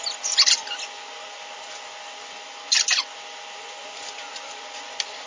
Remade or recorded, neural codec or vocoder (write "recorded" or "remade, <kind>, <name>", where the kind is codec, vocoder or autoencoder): recorded